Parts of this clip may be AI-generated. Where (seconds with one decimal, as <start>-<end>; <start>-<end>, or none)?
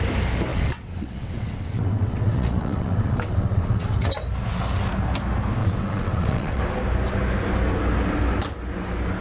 0.5-4.1; 5.6-6.6